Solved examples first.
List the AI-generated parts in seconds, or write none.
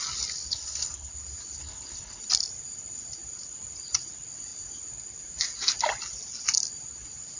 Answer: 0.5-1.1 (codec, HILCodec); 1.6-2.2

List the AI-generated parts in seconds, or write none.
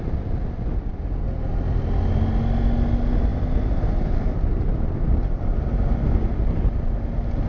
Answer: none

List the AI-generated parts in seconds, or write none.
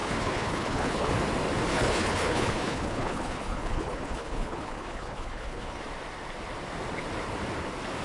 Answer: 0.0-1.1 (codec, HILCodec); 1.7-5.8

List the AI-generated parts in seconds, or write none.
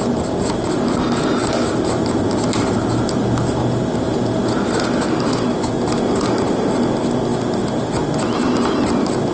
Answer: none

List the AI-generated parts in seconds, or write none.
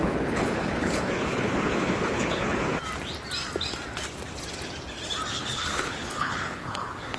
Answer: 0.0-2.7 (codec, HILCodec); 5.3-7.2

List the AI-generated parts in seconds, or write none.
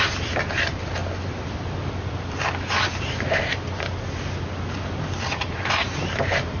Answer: none